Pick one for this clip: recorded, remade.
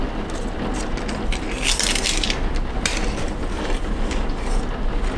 recorded